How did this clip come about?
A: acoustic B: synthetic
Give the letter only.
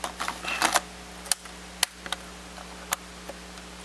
A